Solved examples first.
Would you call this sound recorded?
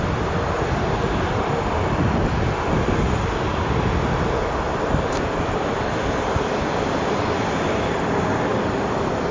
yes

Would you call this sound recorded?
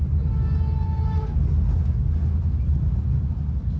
yes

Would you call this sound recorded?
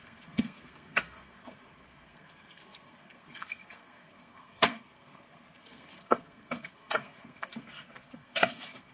no